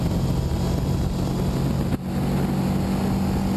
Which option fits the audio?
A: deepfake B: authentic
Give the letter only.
B